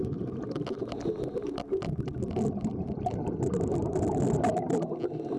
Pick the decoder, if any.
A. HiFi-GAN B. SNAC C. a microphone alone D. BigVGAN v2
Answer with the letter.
C